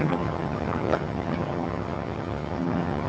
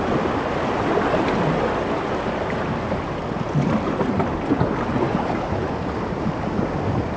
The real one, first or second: second